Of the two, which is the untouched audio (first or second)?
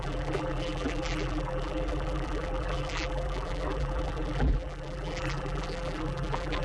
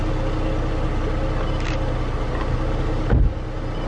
second